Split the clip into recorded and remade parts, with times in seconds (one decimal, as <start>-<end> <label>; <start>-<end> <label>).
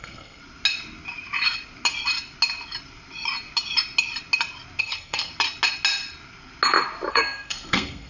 0.0-0.4 remade; 0.4-4.8 recorded; 4.8-5.3 remade; 5.3-7.1 recorded; 7.1-8.1 remade